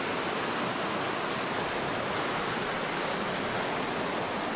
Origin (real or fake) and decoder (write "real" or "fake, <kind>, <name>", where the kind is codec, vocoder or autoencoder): real